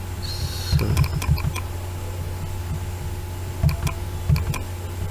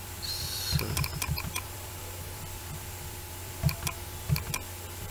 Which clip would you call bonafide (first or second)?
first